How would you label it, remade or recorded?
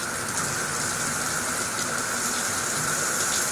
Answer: recorded